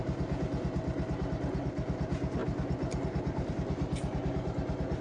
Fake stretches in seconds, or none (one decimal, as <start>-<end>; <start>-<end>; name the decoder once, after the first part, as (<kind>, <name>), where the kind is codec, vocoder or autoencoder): none